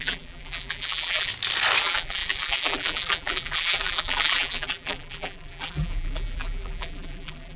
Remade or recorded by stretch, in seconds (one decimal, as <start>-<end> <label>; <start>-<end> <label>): 0.0-1.3 remade; 1.3-1.8 recorded; 1.8-7.6 remade